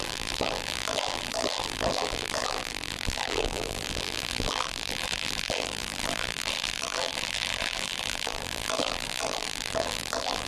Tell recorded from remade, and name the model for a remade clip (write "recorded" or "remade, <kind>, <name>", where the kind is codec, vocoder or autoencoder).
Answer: remade, vocoder, BigVGAN v2